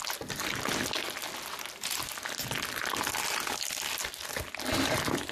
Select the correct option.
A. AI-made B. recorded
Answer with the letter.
B